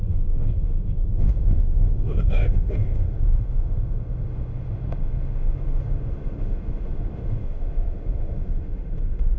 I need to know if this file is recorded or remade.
remade